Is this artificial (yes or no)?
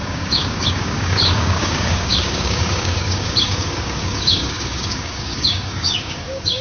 yes